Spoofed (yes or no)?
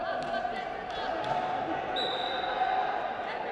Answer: no